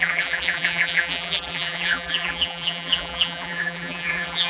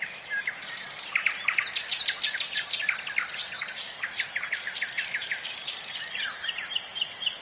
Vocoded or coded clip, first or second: first